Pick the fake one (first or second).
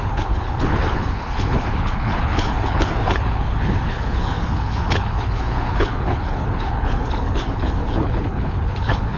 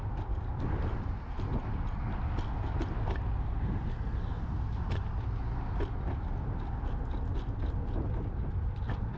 first